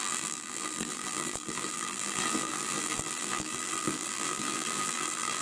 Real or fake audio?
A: fake